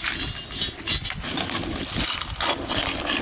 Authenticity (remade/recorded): recorded